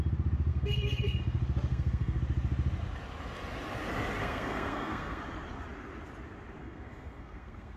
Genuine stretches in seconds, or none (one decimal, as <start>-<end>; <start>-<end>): 0.0-0.5; 1.2-1.7; 2.2-4.2; 5.2-6.6